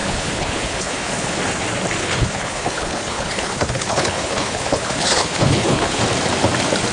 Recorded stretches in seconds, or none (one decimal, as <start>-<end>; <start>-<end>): 1.4-2.0; 6.0-6.9